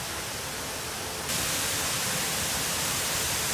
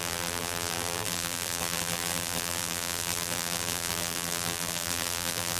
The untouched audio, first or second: first